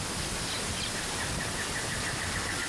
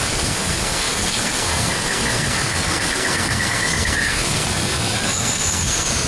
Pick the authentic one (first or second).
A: first